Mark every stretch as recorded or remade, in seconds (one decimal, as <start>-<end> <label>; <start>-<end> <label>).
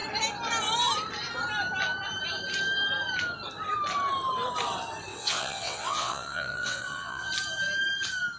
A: 0.0-5.1 recorded; 5.1-7.3 remade; 7.3-8.4 recorded